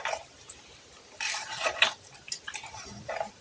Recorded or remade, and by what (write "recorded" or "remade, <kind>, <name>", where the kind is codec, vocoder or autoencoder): remade, vocoder, BigVGAN v2